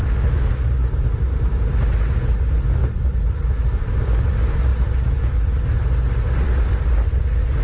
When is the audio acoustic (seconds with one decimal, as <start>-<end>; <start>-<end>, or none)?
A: 0.5-7.6